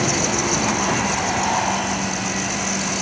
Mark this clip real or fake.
real